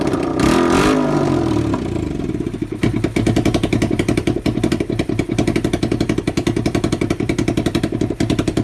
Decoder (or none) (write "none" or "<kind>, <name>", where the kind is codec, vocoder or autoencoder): vocoder, BigVGAN v2